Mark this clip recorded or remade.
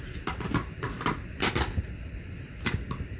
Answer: recorded